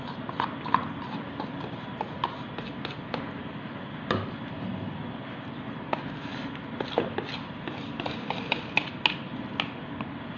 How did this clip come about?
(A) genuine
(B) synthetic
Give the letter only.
A